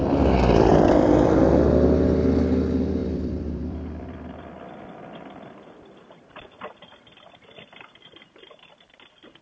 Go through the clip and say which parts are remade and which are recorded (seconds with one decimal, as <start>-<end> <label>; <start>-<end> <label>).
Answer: 0.0-0.7 recorded; 0.7-1.4 remade; 1.4-3.0 recorded; 3.0-5.5 remade; 5.5-9.4 recorded